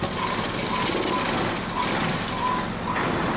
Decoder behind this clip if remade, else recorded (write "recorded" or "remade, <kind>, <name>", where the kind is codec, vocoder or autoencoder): recorded